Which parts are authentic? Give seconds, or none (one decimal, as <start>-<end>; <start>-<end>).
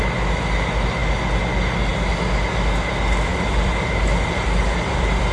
0.0-3.3